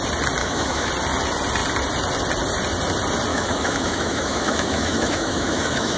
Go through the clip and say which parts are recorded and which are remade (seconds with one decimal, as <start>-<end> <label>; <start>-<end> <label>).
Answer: 0.0-0.4 recorded; 0.4-0.9 remade; 0.9-3.3 recorded; 3.3-6.0 remade